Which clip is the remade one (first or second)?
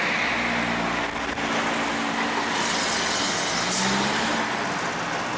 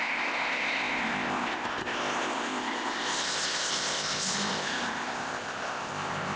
second